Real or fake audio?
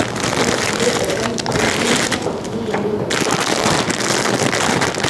real